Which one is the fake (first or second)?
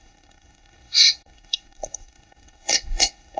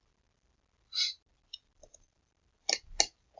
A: first